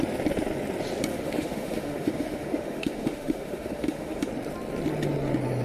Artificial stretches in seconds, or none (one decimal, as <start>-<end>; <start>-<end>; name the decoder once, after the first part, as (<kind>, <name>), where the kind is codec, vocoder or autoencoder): 1.1-4.3 (autoencoder, DAC-VAE)